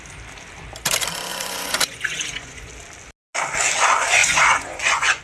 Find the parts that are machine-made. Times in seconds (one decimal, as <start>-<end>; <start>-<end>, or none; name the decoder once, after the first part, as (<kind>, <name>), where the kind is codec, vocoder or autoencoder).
1.3-2.7 (vocoder, Vocos); 4.2-5.2